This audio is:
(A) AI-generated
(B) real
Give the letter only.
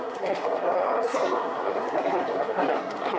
A